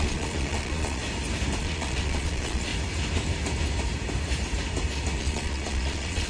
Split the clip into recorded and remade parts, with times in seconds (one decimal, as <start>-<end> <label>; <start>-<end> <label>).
0.0-1.0 remade; 1.0-1.6 recorded; 1.6-2.7 remade; 2.7-5.2 recorded; 5.2-6.3 remade